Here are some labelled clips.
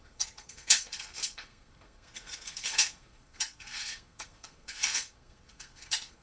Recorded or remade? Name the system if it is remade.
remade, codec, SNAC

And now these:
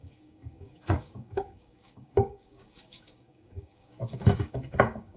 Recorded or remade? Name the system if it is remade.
remade, codec, DAC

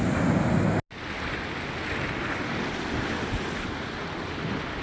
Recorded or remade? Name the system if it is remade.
recorded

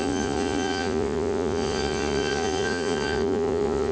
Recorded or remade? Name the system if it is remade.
remade, vocoder, Vocos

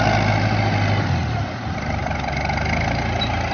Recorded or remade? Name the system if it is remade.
recorded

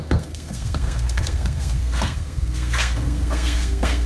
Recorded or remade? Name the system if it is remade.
remade, codec, SNAC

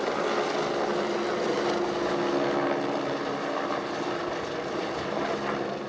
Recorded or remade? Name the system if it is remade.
recorded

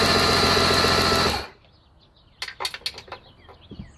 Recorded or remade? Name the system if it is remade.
recorded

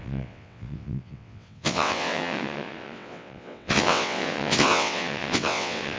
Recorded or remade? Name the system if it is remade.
remade, vocoder, WaveNeXt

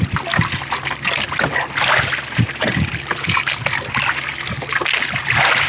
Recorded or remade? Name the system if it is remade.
recorded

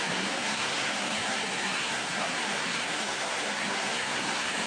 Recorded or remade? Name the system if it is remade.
remade, codec, SNAC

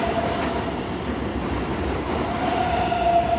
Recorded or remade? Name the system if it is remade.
recorded